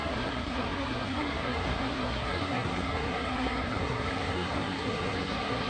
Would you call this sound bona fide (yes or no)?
no